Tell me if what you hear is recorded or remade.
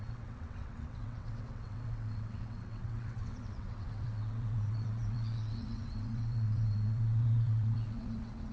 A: remade